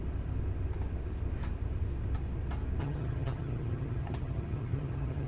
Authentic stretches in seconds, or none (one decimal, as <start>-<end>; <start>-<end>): 0.0-2.8